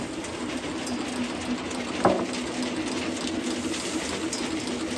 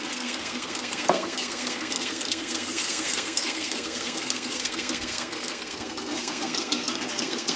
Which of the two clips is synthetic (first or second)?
second